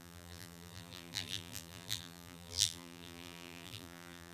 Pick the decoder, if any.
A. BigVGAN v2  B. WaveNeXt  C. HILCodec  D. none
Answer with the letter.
A